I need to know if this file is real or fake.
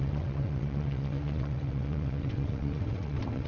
fake